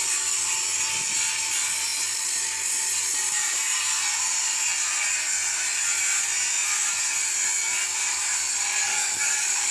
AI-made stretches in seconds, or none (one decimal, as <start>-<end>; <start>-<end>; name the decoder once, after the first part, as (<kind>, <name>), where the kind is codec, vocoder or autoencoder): 8.8-9.7 (codec, DAC)